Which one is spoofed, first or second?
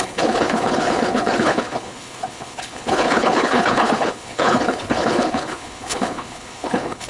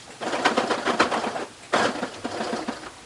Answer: first